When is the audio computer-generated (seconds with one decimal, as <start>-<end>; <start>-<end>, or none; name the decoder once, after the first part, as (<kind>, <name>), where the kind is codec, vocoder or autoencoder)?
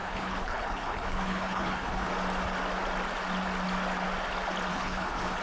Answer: 0.0-2.1 (codec, HILCodec); 4.7-5.4